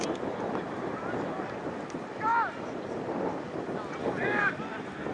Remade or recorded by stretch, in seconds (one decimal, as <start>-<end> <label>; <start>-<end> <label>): 0.0-4.0 recorded; 4.0-4.6 remade; 4.6-5.1 recorded